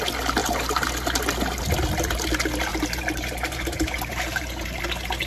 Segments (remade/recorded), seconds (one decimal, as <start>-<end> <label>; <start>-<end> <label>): 0.0-0.4 recorded; 0.4-0.9 remade; 0.9-2.7 recorded; 2.7-4.8 remade; 4.8-5.3 recorded